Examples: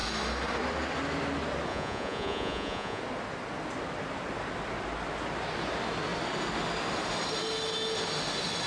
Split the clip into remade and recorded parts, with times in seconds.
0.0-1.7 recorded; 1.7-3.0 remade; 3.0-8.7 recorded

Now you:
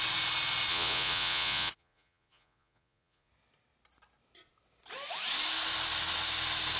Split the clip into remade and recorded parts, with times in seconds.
0.0-0.7 recorded; 0.7-3.3 remade; 3.3-6.8 recorded

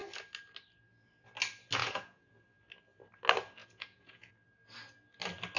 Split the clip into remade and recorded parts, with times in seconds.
0.0-1.8 recorded; 1.8-2.3 remade; 2.3-3.6 recorded; 3.6-4.3 remade; 4.3-5.6 recorded

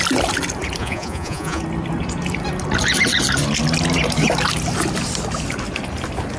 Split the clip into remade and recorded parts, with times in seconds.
0.0-0.8 recorded; 0.8-1.6 remade; 1.6-6.4 recorded